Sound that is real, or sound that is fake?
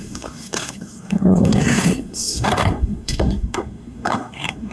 fake